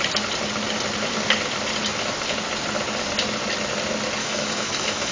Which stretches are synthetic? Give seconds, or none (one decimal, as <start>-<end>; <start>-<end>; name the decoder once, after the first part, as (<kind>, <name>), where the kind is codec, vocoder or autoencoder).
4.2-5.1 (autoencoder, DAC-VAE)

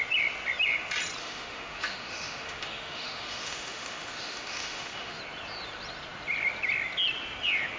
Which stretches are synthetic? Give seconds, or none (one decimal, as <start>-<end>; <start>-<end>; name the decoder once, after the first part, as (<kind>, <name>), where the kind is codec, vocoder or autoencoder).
1.2-5.2 (autoencoder, DAC-VAE)

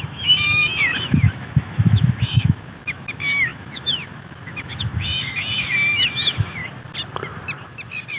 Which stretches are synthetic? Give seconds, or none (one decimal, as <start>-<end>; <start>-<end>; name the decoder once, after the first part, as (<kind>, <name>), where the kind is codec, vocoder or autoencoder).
0.0-6.6 (autoencoder, DAC-VAE)

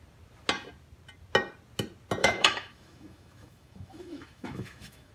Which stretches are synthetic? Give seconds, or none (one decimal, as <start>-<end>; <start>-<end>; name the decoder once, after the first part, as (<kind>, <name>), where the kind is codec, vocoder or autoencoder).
2.2-5.1 (autoencoder, DAC-VAE)